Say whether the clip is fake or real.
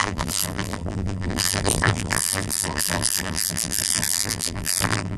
fake